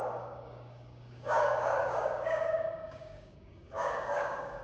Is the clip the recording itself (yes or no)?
no